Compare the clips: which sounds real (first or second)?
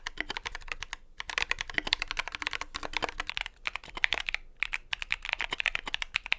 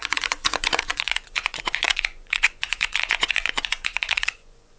first